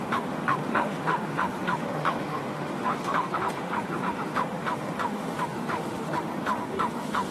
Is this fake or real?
fake